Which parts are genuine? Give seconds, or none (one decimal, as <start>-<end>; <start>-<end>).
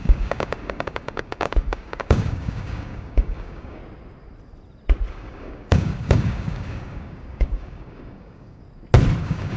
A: 3.8-5.1; 8.6-9.2